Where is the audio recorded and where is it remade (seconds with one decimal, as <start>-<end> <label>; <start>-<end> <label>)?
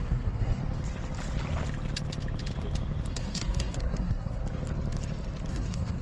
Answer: 0.0-0.6 remade; 0.6-3.1 recorded; 3.1-4.4 remade; 4.4-5.5 recorded; 5.5-6.0 remade